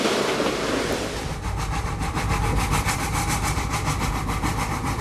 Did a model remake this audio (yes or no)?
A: yes